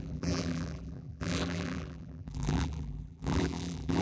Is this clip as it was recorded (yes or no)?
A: no